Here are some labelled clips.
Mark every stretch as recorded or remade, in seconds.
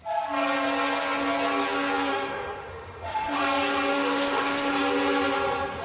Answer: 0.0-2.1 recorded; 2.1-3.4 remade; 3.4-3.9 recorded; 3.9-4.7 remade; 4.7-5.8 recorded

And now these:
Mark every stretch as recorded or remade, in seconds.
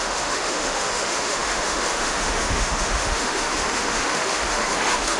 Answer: 0.0-5.2 remade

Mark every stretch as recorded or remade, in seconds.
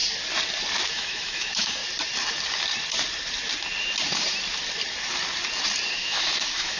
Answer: 0.0-0.9 recorded; 0.9-1.8 remade; 1.8-5.9 recorded; 5.9-6.8 remade